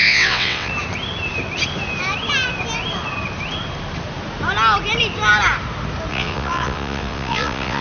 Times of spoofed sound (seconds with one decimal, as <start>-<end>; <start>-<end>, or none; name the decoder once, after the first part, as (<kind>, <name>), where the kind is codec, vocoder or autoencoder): 0.0-0.7 (vocoder, WaveNeXt); 6.1-7.8